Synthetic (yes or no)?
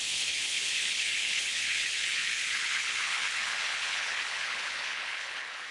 yes